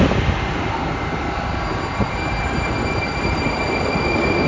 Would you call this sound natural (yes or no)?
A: yes